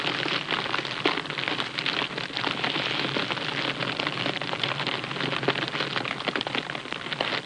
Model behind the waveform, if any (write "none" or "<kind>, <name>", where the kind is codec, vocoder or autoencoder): none